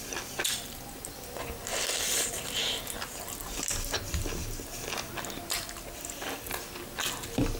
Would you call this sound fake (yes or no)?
no